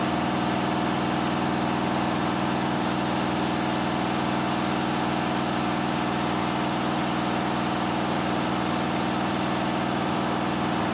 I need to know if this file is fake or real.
real